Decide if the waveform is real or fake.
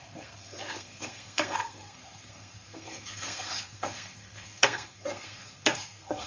fake